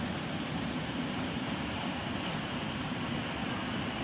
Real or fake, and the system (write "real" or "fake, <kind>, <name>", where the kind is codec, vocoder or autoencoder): fake, vocoder, BigVGAN v2